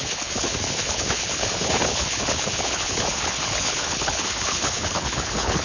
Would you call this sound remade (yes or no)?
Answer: yes